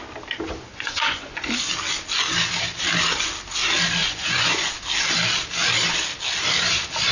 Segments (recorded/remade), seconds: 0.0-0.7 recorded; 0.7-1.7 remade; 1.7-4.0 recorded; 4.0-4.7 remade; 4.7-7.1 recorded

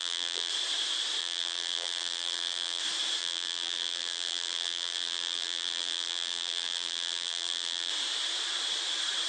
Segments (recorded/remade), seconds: 0.0-0.5 remade; 0.5-1.2 recorded; 1.2-2.8 remade; 2.8-3.2 recorded; 3.2-7.9 remade; 7.9-9.3 recorded

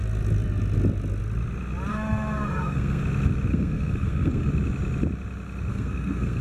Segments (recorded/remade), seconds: 0.0-1.9 recorded; 1.9-3.0 remade; 3.0-3.5 recorded; 3.5-4.5 remade; 4.5-5.7 recorded; 5.7-6.4 remade